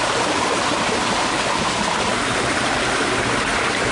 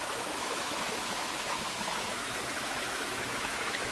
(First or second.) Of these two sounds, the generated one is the second